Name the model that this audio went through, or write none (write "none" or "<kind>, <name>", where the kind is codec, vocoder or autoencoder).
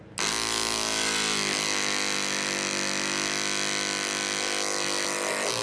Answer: none